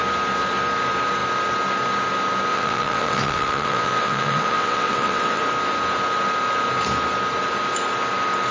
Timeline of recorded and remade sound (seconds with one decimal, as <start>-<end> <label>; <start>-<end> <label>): 0.0-2.5 recorded; 2.5-5.4 remade; 5.4-8.5 recorded